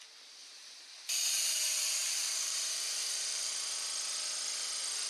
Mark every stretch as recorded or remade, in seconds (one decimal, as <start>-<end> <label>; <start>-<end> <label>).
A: 0.0-0.4 recorded; 0.4-3.5 remade; 3.5-5.1 recorded